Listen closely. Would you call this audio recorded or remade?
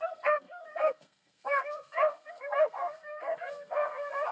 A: remade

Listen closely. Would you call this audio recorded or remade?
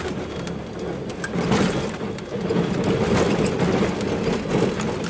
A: recorded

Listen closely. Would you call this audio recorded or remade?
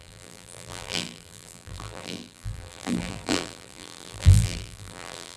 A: remade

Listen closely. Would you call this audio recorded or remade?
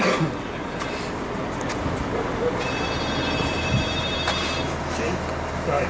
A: recorded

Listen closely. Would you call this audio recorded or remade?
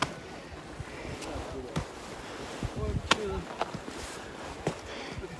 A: recorded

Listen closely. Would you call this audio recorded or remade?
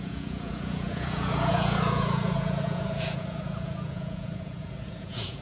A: remade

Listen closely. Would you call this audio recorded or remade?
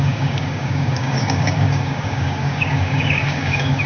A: remade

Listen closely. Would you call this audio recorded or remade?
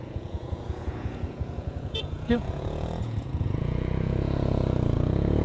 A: remade